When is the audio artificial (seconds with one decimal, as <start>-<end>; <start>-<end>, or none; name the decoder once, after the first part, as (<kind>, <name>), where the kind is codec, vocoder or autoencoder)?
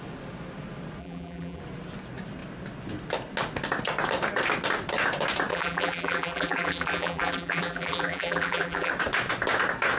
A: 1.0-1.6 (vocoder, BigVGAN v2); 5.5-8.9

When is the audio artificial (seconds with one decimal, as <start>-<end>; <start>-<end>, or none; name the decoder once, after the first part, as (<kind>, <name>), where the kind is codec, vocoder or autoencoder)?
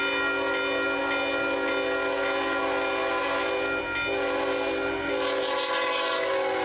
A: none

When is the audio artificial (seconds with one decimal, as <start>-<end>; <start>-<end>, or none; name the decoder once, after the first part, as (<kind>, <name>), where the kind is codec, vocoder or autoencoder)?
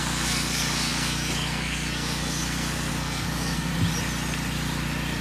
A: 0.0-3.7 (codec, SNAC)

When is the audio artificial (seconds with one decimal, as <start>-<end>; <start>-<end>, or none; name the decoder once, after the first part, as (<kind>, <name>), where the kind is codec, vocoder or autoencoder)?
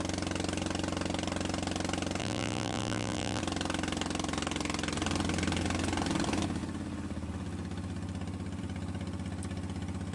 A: 2.2-3.4 (vocoder, BigVGAN v2)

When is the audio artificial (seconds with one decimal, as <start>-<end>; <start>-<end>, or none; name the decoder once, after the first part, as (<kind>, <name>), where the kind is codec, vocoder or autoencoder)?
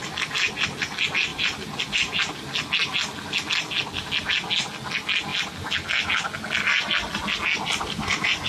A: none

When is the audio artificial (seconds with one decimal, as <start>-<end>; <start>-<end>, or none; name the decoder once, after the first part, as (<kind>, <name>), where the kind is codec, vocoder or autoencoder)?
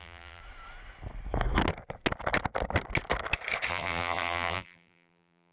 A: 0.0-0.4 (vocoder, BigVGAN v2); 3.7-5.5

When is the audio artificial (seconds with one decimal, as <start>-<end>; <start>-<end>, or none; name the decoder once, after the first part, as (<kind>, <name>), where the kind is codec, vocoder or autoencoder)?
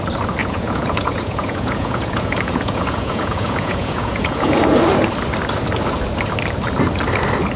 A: 0.4-4.6 (vocoder, Vocos)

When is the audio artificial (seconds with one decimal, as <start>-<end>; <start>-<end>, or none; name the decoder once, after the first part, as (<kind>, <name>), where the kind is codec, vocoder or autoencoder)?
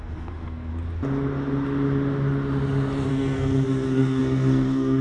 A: 0.0-0.7 (codec, SNAC); 3.1-5.0